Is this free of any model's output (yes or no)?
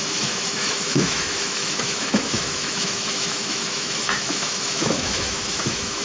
no